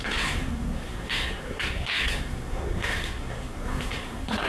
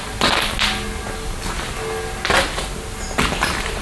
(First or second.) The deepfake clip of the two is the first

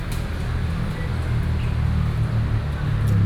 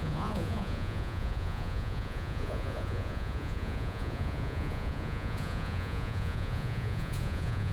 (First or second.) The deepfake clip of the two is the second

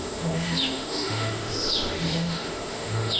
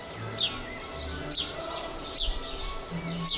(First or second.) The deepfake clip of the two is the first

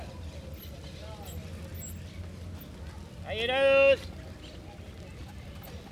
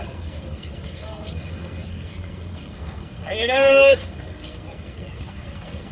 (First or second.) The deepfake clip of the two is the second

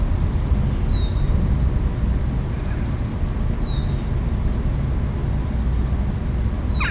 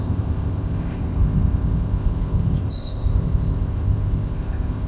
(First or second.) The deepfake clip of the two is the second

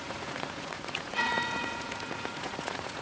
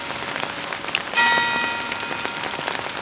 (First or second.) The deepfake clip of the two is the first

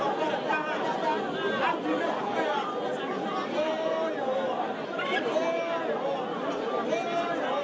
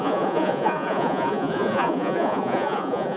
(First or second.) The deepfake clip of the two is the second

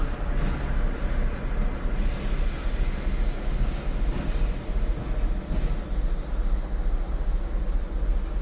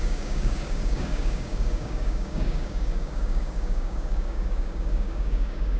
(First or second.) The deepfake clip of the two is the second